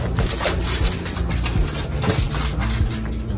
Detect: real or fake real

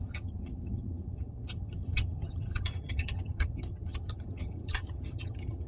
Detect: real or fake fake